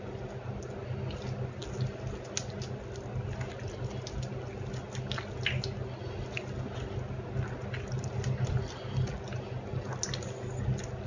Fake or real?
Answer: real